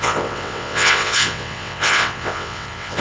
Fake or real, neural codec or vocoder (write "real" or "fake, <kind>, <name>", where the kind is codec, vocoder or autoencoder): fake, vocoder, WaveNeXt